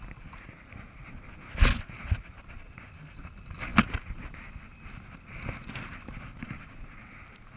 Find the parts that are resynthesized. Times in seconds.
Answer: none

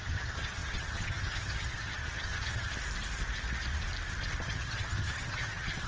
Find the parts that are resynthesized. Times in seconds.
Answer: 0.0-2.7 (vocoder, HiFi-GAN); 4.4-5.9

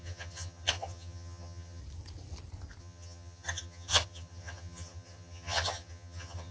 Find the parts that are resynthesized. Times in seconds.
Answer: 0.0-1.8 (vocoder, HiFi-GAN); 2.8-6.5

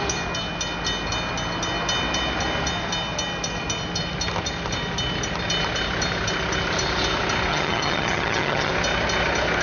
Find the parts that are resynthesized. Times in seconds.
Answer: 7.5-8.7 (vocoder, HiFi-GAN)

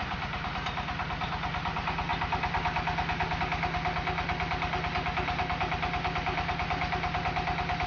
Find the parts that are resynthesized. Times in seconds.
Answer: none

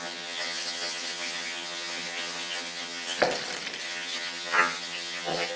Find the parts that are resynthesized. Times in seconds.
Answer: 0.0-3.2 (vocoder, HiFi-GAN); 3.8-5.6